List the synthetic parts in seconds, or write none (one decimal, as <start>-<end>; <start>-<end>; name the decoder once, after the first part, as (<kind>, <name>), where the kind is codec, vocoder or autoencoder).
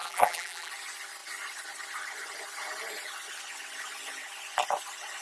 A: 0.0-0.7 (vocoder, BigVGAN v2)